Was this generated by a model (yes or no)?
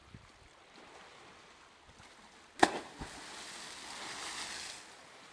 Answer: no